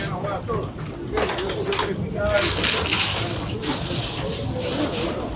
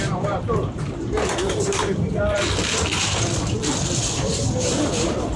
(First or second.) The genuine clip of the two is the first